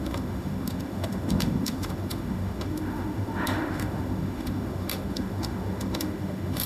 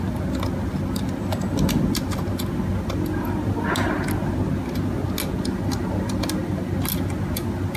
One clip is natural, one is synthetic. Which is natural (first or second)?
second